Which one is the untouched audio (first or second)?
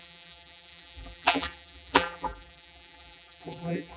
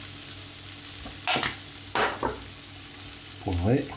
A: second